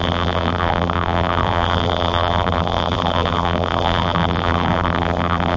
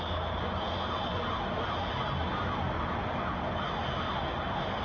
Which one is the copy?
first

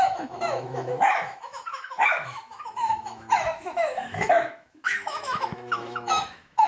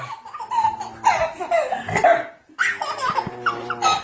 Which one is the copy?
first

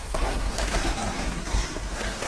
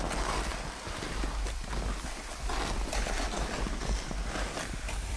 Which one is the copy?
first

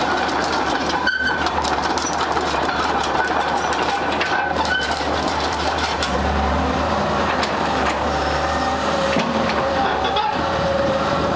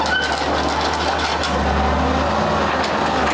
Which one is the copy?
first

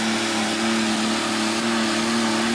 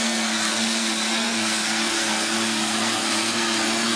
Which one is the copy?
second